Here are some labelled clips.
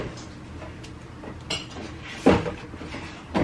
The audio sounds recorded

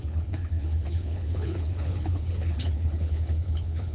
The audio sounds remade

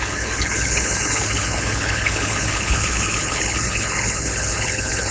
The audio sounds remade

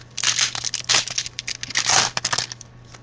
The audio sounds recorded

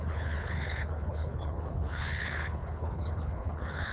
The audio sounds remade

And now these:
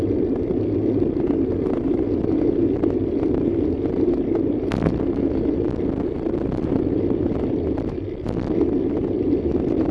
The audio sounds recorded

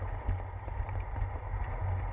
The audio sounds recorded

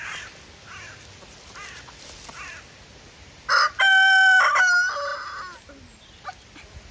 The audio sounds recorded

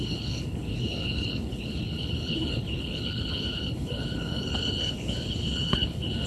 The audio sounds remade